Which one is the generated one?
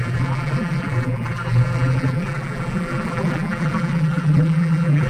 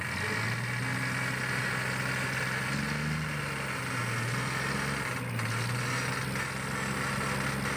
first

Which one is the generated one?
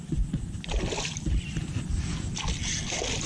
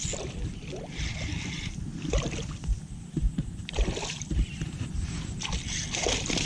second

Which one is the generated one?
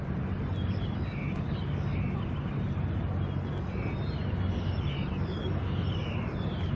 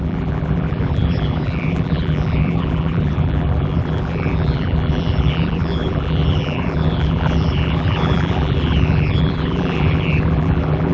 second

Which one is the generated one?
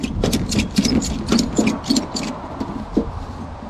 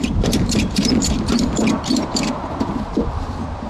second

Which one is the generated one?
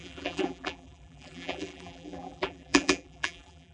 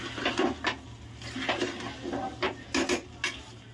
first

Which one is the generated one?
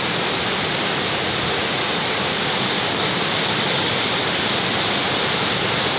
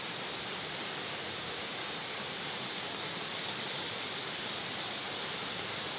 second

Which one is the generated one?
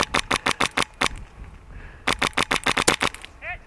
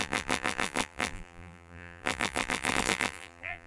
second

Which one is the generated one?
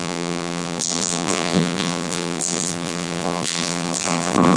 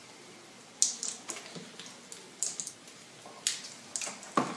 first